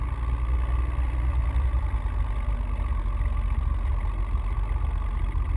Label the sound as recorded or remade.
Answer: recorded